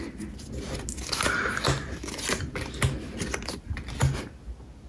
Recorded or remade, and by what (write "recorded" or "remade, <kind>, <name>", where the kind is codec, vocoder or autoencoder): recorded